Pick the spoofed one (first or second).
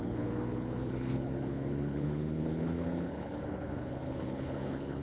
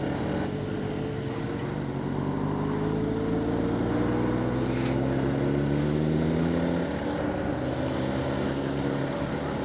first